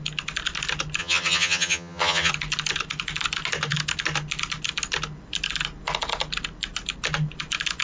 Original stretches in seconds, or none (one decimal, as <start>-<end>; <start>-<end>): 0.0-1.0; 2.3-7.8